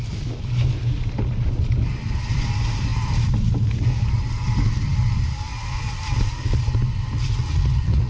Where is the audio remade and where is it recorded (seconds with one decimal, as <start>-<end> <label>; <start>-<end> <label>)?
0.0-7.4 recorded; 7.4-8.1 remade